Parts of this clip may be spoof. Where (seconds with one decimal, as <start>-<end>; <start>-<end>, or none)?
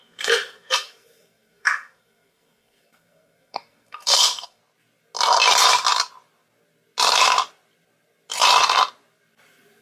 0.0-4.6